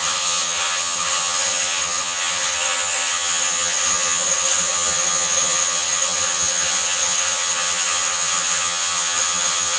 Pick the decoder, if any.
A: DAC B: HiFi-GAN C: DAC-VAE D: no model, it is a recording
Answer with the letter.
B